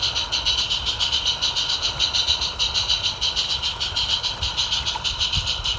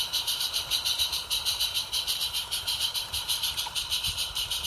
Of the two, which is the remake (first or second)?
second